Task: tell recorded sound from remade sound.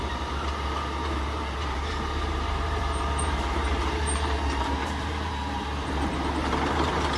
remade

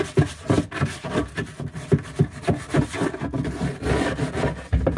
recorded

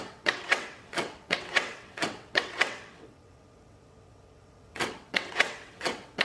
remade